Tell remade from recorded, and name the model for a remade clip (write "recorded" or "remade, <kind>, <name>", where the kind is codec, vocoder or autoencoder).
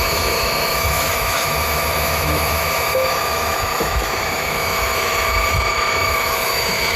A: remade, autoencoder, DAC-VAE